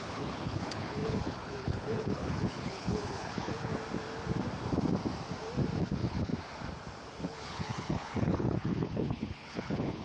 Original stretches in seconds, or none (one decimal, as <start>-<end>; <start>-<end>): 3.7-5.8; 6.3-7.2